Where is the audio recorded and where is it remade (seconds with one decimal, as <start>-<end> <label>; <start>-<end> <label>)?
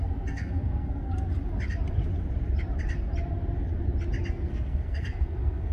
0.0-1.1 remade; 1.1-4.3 recorded; 4.3-5.7 remade